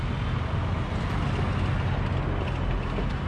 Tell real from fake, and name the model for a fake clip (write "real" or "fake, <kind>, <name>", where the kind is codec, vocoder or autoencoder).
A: real